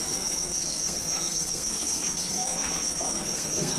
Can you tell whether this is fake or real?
fake